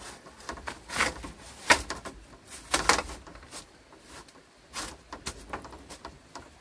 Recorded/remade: recorded